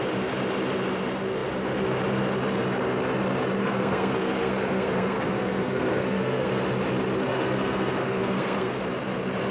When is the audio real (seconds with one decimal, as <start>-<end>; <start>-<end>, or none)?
0.0-3.6; 6.6-7.3; 8.7-9.5